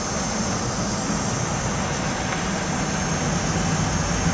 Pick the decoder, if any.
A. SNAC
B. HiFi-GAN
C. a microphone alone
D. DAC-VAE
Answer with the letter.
C